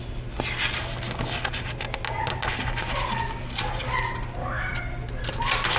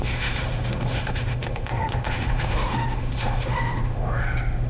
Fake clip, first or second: second